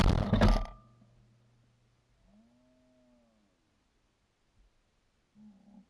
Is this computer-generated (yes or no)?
no